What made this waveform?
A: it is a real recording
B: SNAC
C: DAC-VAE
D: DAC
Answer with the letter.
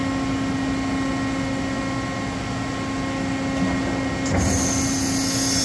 A